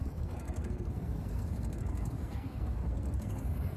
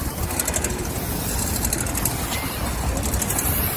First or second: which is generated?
first